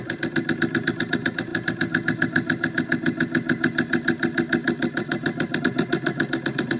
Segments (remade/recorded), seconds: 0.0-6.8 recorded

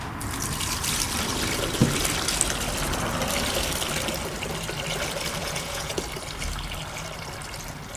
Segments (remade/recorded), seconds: 0.0-5.4 recorded; 5.4-6.0 remade; 6.0-8.0 recorded

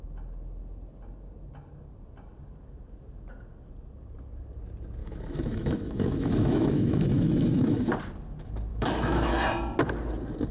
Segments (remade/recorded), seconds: 0.0-5.0 recorded; 5.0-7.9 remade; 7.9-8.7 recorded; 8.7-9.3 remade; 9.3-10.5 recorded

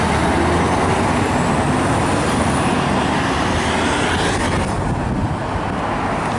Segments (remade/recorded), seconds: 0.0-6.4 recorded

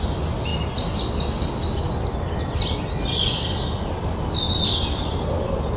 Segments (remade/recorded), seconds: 0.0-5.8 recorded